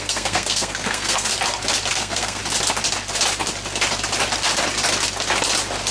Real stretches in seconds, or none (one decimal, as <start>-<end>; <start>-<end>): 1.3-1.9; 2.4-5.9